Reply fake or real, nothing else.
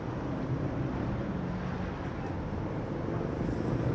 real